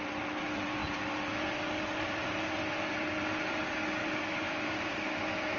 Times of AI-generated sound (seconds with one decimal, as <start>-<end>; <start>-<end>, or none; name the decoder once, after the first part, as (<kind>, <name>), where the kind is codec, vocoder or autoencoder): 4.0-5.6 (autoencoder, DAC-VAE)

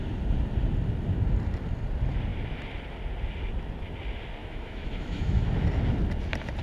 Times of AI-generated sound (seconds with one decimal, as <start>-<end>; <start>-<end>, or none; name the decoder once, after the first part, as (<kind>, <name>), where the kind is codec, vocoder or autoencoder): 4.4-5.5 (autoencoder, DAC-VAE)

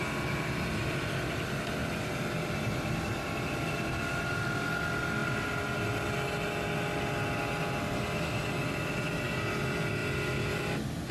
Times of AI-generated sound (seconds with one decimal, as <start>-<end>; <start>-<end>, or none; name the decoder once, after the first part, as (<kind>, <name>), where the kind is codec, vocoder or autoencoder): none

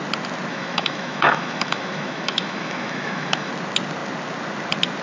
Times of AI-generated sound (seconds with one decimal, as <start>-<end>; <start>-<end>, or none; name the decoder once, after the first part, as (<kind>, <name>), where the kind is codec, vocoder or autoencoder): 0.5-3.5 (autoencoder, DAC-VAE)

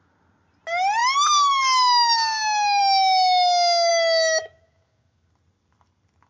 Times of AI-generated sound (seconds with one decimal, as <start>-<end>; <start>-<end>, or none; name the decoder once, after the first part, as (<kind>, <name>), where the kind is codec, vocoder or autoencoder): 3.9-5.3 (autoencoder, DAC-VAE)

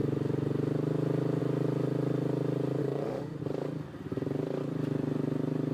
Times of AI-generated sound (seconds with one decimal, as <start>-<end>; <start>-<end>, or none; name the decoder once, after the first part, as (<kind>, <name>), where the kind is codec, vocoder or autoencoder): 2.8-3.4 (autoencoder, DAC-VAE)

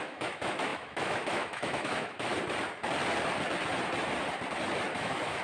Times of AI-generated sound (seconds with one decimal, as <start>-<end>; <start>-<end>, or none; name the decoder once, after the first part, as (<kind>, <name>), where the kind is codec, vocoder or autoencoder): 0.0-2.3 (autoencoder, DAC-VAE); 5.0-5.4

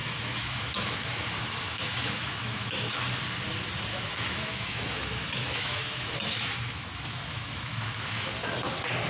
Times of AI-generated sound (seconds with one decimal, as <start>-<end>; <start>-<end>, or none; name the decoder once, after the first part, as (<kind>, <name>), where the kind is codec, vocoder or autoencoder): 0.0-2.9 (autoencoder, DAC-VAE); 3.9-8.3